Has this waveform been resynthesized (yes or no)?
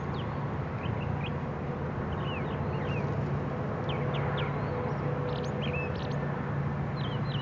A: no